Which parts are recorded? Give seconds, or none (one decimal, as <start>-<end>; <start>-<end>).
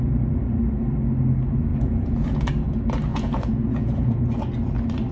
0.0-1.7; 2.5-3.1; 4.2-5.1